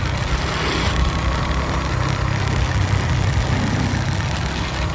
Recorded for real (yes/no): yes